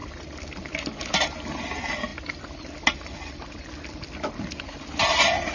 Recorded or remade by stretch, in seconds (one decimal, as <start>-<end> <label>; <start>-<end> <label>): 0.0-5.5 recorded

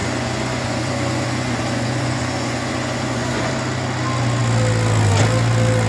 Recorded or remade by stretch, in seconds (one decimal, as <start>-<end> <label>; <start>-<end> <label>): 0.0-3.5 remade; 3.5-5.9 recorded

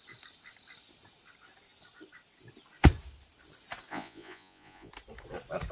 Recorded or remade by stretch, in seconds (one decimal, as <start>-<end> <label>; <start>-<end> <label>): 0.0-3.9 recorded; 3.9-4.9 remade; 4.9-5.7 recorded

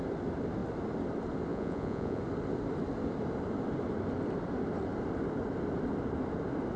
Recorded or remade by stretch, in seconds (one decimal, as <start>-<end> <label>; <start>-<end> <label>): 0.0-1.5 recorded; 1.5-2.2 remade; 2.2-6.8 recorded

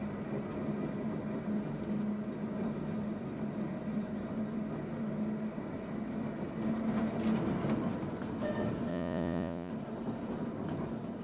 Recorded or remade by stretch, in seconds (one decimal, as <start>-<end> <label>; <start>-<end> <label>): 0.0-8.9 recorded; 8.9-9.7 remade; 9.7-11.2 recorded

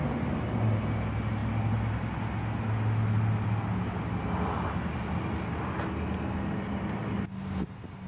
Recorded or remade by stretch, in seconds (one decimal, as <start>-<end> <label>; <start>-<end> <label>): 0.0-8.1 recorded